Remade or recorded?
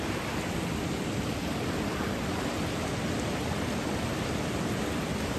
recorded